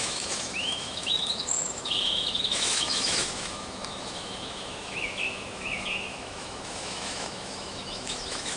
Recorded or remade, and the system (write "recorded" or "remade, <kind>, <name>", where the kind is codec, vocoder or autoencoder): remade, autoencoder, DAC-VAE